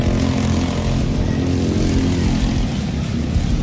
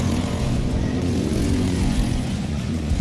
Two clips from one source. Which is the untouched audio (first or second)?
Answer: first